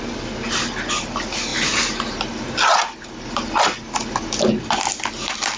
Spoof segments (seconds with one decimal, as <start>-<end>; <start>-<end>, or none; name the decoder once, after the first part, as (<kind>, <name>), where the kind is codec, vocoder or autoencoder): none